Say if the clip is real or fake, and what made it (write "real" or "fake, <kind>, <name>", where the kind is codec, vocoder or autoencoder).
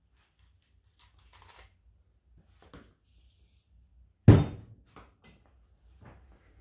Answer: real